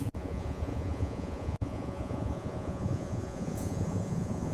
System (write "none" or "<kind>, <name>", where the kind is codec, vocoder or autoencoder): vocoder, Vocos